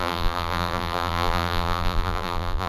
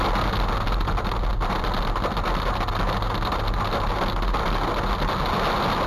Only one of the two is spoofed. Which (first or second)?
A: first